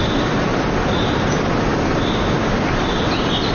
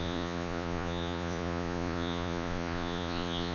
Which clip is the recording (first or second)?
first